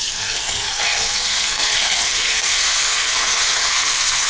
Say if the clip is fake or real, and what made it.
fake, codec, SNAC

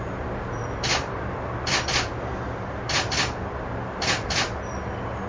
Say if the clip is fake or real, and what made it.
real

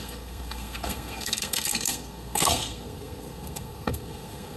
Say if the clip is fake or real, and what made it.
fake, codec, SNAC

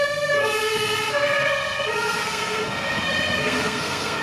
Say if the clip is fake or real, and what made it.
fake, codec, SNAC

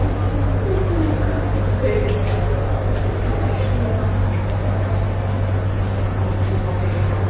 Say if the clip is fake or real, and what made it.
real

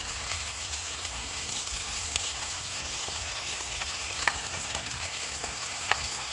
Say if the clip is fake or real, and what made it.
fake, codec, SNAC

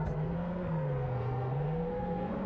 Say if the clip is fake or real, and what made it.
fake, codec, SNAC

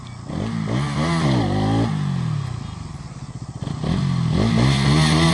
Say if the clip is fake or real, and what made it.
real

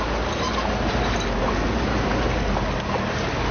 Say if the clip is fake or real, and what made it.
real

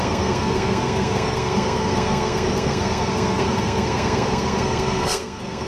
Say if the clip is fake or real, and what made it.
fake, codec, SNAC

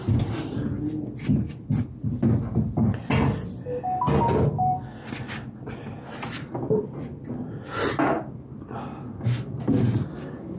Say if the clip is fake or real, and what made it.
real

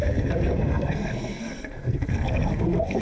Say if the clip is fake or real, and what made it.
fake, codec, SNAC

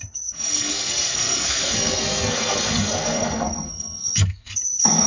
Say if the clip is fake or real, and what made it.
fake, codec, SNAC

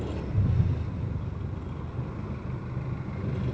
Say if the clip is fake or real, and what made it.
real